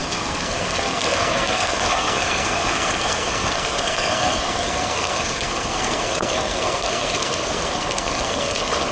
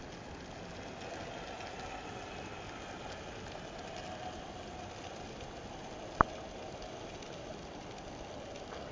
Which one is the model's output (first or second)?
first